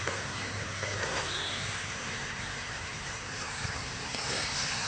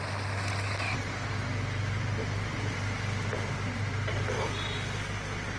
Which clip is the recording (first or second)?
second